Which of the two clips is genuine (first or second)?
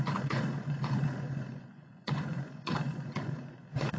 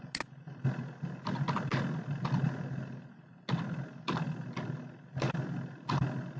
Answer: second